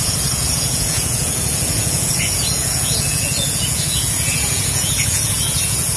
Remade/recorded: remade